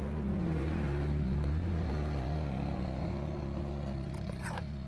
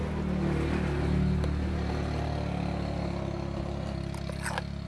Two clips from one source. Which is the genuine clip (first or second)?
second